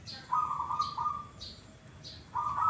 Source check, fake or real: real